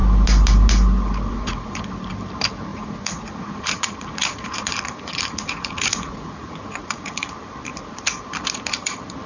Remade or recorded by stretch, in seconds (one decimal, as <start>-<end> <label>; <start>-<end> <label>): 0.0-1.3 recorded; 1.3-1.8 remade; 1.8-2.7 recorded; 2.7-7.3 remade; 7.3-9.3 recorded